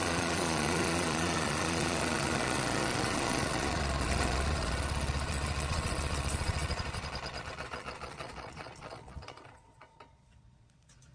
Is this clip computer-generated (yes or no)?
yes